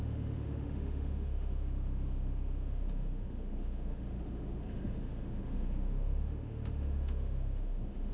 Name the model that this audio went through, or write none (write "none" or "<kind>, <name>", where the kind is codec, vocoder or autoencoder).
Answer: autoencoder, DAC-VAE